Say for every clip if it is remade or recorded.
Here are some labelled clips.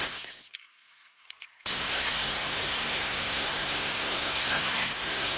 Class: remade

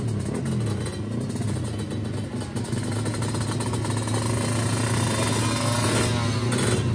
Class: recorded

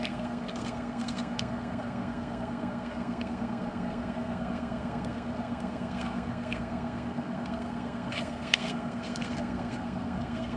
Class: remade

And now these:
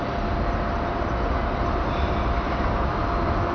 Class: recorded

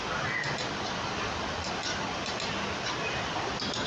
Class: recorded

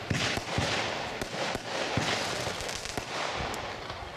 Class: recorded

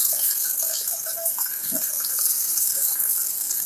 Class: remade